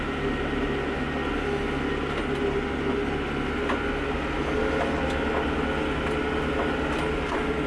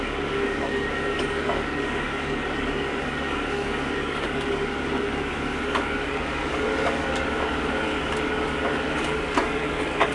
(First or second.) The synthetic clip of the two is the second